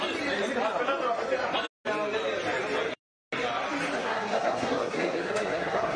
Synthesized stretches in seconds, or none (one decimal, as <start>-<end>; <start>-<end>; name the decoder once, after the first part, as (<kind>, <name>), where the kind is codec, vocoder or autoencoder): 4.0-6.0 (codec, SNAC)